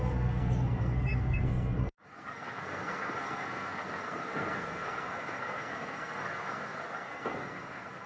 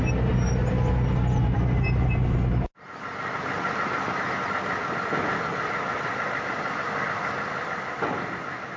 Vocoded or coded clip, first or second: first